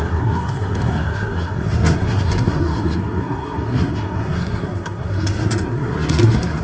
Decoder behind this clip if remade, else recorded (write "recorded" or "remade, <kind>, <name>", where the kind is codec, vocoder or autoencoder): remade, codec, SNAC